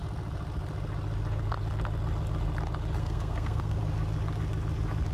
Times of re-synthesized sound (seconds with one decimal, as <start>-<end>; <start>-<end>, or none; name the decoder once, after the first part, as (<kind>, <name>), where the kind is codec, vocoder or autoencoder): 3.0-3.8 (codec, SNAC)